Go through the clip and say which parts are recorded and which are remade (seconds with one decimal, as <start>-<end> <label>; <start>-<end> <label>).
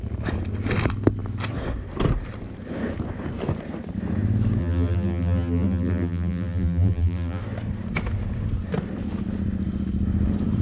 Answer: 0.0-4.6 recorded; 4.6-7.4 remade; 7.4-10.6 recorded